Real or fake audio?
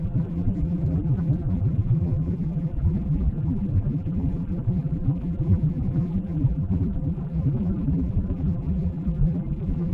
fake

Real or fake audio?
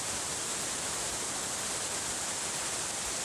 real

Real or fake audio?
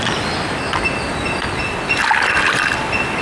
real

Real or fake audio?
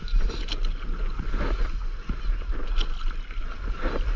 real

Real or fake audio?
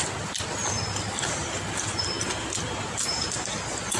fake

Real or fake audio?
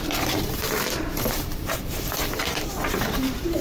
fake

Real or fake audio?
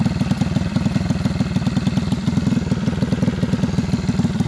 real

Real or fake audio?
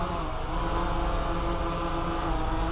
real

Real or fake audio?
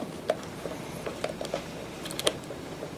fake